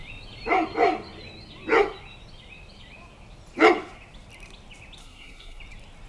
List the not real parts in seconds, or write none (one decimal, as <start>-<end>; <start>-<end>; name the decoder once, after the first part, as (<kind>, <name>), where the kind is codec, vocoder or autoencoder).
5.0-5.6 (codec, SNAC)